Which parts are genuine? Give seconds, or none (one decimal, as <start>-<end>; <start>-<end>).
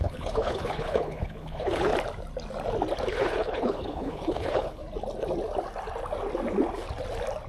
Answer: 1.9-3.1; 4.8-7.5